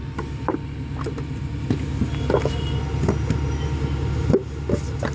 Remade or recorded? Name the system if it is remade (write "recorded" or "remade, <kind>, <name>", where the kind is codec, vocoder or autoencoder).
recorded